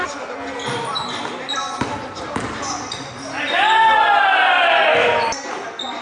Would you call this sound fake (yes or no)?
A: no